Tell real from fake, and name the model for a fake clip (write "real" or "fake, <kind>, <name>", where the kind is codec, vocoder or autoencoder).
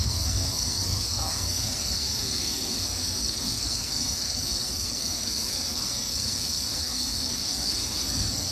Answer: fake, codec, SNAC